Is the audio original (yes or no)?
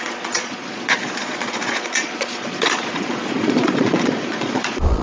no